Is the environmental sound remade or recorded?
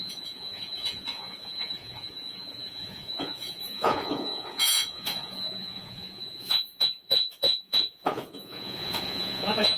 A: remade